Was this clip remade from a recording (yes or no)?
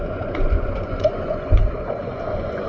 yes